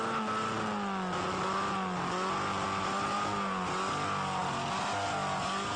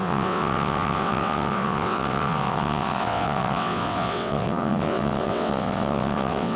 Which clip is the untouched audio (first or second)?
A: first